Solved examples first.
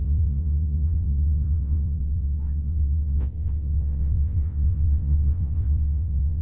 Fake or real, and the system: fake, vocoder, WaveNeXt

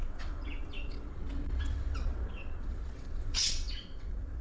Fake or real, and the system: fake, vocoder, WaveNeXt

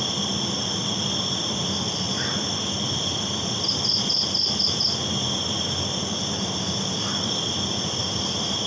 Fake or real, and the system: real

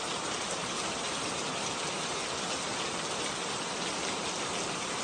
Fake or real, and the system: real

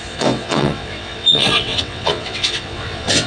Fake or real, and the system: fake, vocoder, WaveNeXt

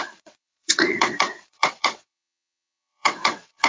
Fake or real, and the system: fake, vocoder, WaveNeXt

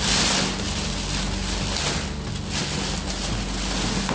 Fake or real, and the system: real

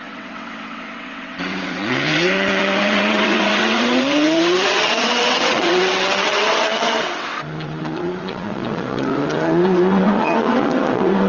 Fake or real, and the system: fake, vocoder, WaveNeXt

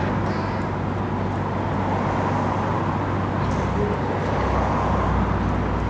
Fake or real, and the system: real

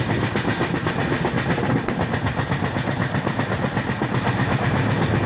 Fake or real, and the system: real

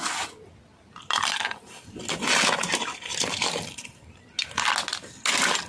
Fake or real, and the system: real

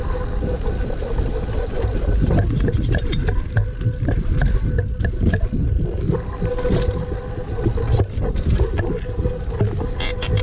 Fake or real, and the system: real